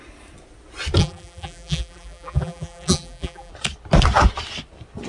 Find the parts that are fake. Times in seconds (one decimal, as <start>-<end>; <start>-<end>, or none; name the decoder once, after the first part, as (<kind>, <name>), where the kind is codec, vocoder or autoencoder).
1.0-3.5 (vocoder, BigVGAN v2)